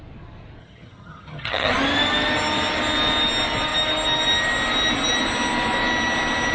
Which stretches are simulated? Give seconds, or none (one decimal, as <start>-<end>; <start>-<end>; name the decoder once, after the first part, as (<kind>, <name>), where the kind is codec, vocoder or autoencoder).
0.6-1.7 (vocoder, HiFi-GAN)